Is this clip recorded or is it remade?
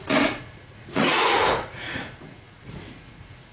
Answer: remade